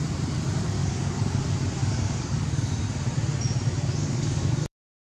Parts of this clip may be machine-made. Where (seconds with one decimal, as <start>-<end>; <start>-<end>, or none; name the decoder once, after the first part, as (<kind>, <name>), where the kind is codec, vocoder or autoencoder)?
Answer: 0.8-1.4 (codec, DAC); 1.8-2.7; 4.0-5.0